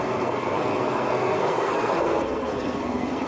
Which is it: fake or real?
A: fake